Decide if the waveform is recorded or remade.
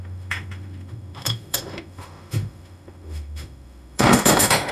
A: remade